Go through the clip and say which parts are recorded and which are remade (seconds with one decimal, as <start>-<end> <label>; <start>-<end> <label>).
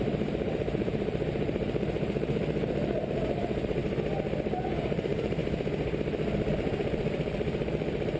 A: 0.0-3.8 remade; 3.8-4.7 recorded; 4.7-5.4 remade; 5.4-6.5 recorded; 6.5-8.2 remade